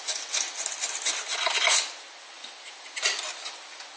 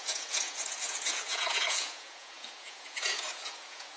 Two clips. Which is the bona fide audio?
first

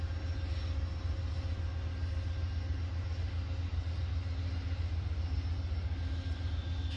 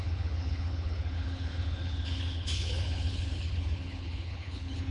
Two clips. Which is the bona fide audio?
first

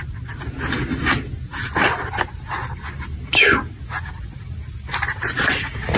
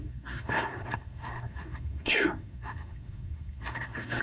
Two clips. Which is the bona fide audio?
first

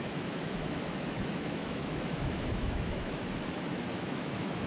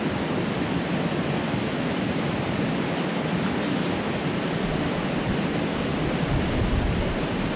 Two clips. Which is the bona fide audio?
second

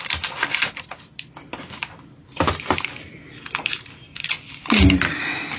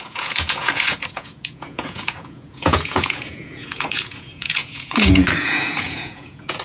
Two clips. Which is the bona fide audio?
first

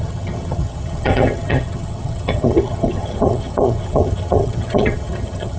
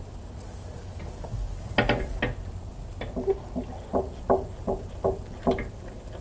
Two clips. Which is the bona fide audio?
second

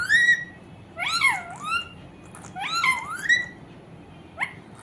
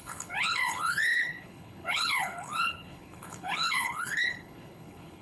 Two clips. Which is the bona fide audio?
first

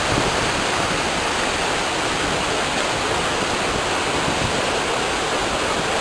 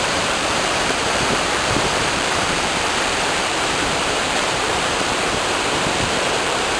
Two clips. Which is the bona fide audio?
first